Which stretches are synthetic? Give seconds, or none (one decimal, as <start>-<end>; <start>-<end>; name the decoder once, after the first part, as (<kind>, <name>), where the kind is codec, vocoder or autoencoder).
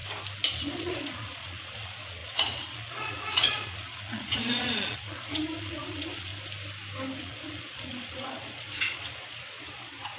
0.5-6.3 (vocoder, Vocos); 7.2-10.2